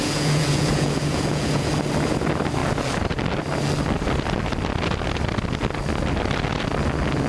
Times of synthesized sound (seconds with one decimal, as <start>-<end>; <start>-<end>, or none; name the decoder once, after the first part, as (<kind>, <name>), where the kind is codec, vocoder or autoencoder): 0.0-1.7 (vocoder, Vocos)